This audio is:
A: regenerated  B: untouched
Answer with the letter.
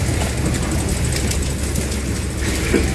B